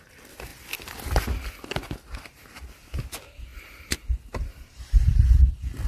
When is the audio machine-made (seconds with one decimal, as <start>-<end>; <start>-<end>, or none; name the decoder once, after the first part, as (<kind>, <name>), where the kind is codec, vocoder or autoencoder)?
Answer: 3.5-5.1 (vocoder, BigVGAN v2)